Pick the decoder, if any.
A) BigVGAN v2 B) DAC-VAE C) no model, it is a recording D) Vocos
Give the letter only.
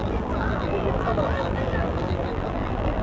A